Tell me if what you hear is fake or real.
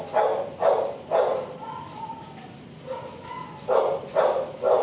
real